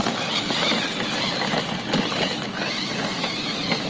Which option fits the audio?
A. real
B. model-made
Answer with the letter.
A